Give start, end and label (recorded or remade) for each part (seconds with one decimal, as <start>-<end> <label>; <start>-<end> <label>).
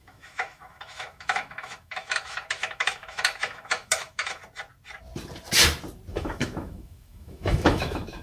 0.0-4.4 remade; 4.4-6.1 recorded; 6.1-8.2 remade